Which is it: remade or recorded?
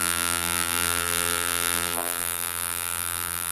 remade